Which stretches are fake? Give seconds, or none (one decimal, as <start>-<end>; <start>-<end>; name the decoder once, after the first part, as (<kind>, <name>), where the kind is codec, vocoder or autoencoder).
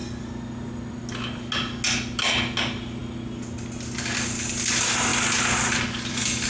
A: none